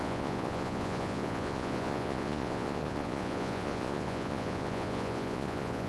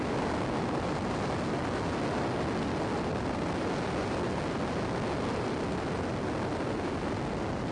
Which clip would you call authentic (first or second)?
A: second